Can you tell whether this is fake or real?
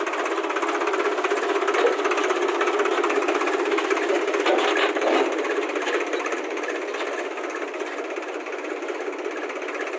real